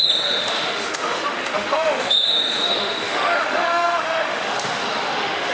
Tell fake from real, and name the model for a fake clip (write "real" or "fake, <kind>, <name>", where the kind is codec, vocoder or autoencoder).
fake, autoencoder, DAC-VAE